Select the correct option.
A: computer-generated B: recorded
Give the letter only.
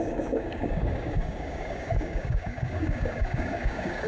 A